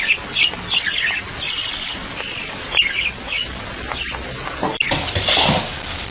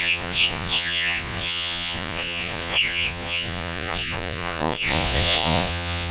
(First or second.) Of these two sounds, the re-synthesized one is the second